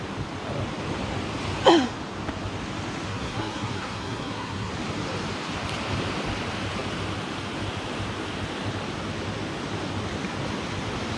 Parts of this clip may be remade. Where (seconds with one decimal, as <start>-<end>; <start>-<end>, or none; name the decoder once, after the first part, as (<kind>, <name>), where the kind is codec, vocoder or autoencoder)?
3.1-4.7 (codec, SNAC)